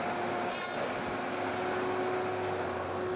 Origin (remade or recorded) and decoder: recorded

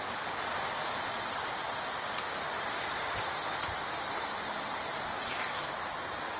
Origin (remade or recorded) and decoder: recorded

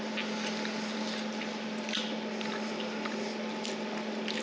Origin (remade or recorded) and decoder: recorded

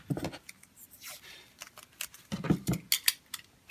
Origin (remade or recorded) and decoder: recorded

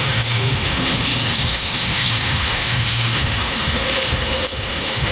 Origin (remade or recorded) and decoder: remade, autoencoder, DAC-VAE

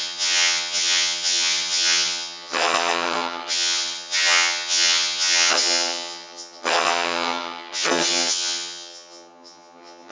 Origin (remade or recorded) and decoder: remade, vocoder, HiFi-GAN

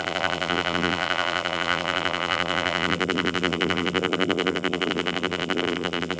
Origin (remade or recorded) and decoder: remade, vocoder, BigVGAN v2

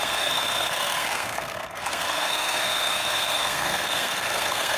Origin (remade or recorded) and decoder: remade, codec, SNAC